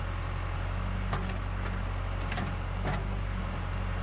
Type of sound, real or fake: real